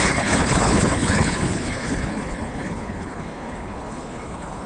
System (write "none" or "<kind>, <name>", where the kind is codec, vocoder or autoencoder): codec, HILCodec